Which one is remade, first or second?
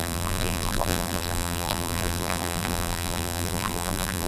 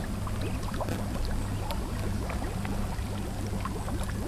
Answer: first